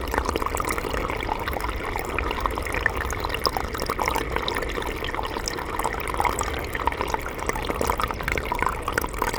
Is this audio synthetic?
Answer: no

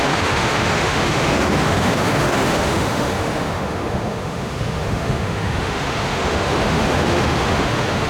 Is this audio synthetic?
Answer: yes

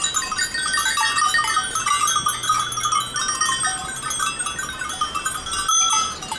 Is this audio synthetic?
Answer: no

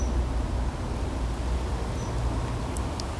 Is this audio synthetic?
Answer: no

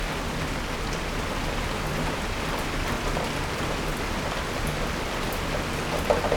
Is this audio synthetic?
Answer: no